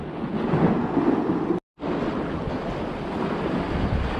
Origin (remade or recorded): recorded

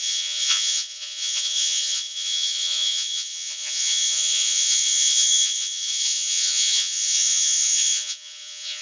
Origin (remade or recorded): remade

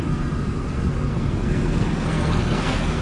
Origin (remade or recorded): remade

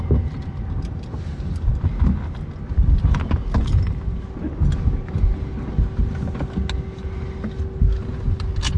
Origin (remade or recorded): recorded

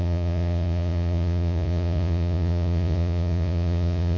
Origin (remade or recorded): remade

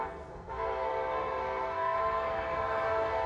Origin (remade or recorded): remade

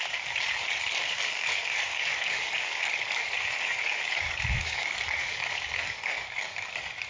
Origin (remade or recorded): remade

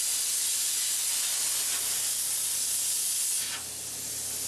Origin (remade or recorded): recorded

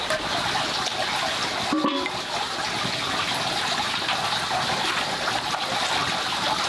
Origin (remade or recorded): recorded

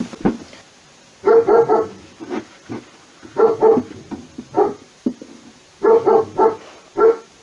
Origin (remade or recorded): recorded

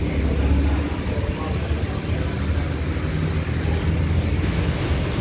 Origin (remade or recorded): recorded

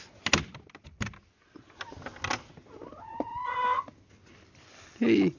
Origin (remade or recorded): recorded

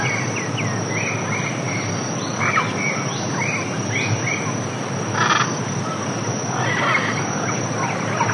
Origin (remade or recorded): recorded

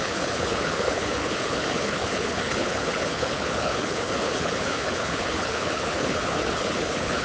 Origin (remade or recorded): remade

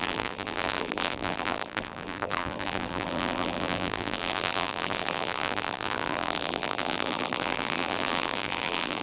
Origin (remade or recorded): remade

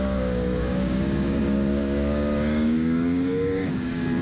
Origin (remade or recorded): remade